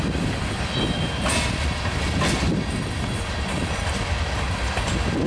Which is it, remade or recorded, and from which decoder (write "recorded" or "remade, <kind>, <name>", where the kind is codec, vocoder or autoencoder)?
recorded